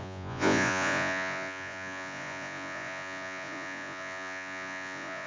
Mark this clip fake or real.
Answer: fake